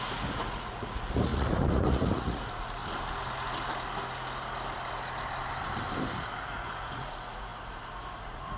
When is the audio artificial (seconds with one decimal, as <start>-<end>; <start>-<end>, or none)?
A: 0.0-2.8; 6.1-8.6